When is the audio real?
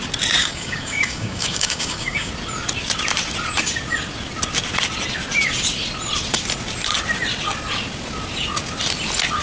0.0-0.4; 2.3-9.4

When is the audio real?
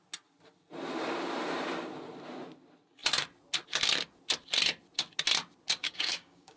0.0-5.8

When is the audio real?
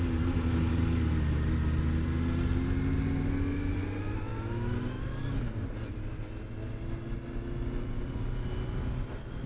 0.0-9.5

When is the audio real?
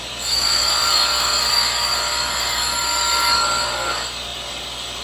none